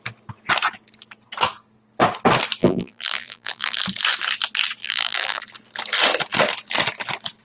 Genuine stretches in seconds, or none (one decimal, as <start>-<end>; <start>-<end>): 0.0-2.6; 3.8-4.8; 5.4-7.4